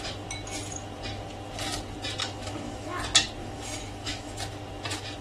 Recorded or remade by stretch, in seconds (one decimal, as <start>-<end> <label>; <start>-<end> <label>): 0.0-2.2 recorded; 2.2-3.0 remade; 3.0-3.4 recorded; 3.4-4.4 remade; 4.4-5.2 recorded